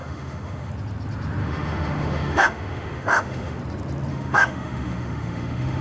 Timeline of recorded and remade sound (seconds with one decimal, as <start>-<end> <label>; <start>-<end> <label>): 0.0-0.7 remade; 0.7-1.4 recorded; 1.4-3.6 remade; 3.6-4.1 recorded; 4.1-5.8 remade